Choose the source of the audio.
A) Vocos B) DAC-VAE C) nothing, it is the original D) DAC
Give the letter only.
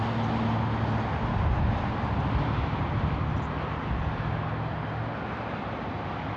C